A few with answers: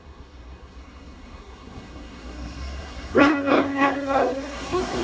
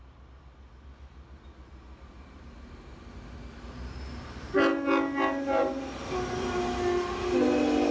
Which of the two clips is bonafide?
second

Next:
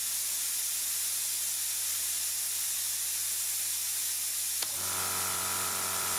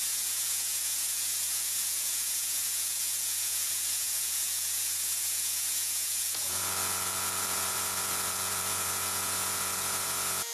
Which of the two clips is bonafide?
first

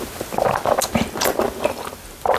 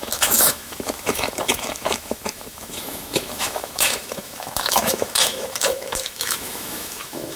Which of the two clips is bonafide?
first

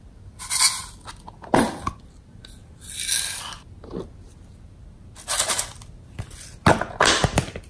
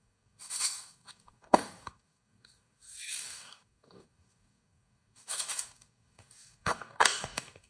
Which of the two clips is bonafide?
first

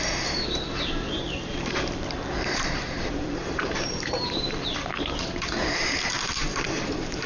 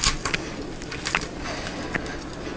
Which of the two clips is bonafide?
second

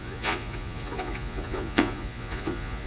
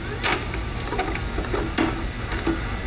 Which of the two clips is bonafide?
second